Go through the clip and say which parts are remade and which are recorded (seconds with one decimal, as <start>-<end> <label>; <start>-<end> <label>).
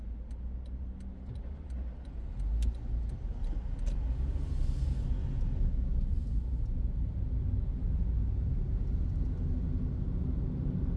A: 0.0-11.0 recorded